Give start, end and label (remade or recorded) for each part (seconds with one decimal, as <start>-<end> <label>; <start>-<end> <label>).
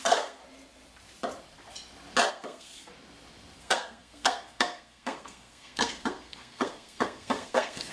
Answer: 0.0-0.4 remade; 0.4-2.3 recorded; 2.3-2.9 remade; 2.9-3.6 recorded; 3.6-7.9 remade